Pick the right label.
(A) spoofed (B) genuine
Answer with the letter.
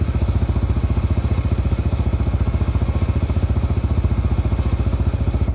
B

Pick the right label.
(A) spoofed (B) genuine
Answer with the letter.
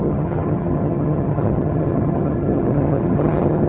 A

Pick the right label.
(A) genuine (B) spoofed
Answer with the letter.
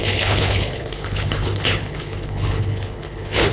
B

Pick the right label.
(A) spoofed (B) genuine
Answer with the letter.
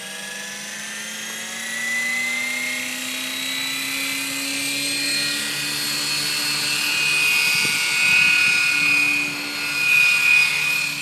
B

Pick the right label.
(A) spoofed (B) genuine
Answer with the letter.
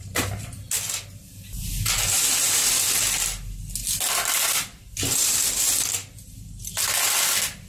B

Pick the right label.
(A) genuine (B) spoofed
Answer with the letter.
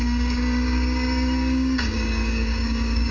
B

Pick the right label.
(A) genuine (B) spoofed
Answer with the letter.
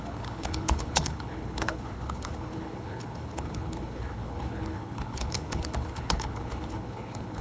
B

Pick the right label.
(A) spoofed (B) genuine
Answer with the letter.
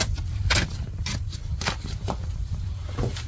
B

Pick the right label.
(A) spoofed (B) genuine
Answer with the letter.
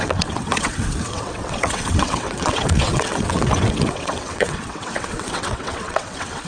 A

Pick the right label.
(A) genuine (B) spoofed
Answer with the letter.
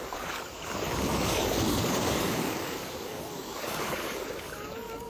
B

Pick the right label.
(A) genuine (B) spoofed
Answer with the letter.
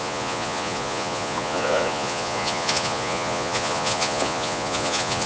B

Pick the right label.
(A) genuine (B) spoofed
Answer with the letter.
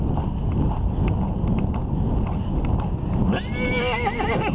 A